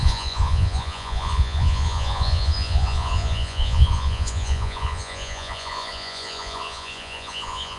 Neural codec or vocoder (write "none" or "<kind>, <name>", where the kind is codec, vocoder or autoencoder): vocoder, Vocos